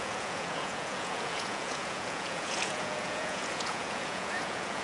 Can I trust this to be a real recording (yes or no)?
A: no